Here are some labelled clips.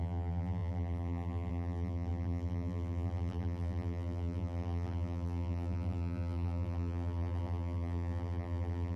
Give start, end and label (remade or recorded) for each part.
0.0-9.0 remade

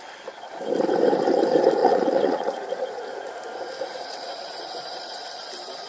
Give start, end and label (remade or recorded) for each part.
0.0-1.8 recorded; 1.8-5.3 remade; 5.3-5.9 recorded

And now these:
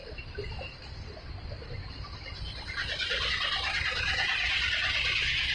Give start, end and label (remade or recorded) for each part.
0.0-5.5 recorded

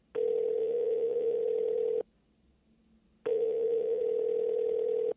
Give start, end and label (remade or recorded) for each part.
0.0-0.6 recorded; 0.6-1.4 remade; 1.4-3.3 recorded; 3.3-4.0 remade; 4.0-5.2 recorded

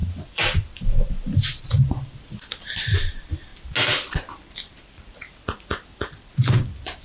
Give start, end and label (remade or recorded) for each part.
0.0-3.5 remade; 3.5-4.3 recorded; 4.3-7.0 remade

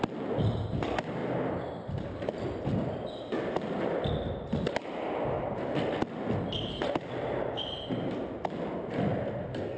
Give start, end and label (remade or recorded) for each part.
0.0-9.8 recorded

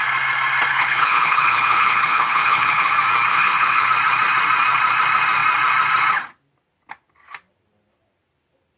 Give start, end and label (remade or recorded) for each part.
0.0-0.7 recorded; 0.7-2.9 remade; 2.9-3.3 recorded; 3.3-3.9 remade; 3.9-8.8 recorded

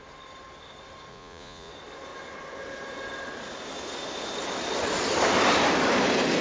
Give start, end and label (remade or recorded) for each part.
0.0-1.1 recorded; 1.1-1.7 remade; 1.7-6.4 recorded